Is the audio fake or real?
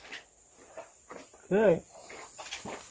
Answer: real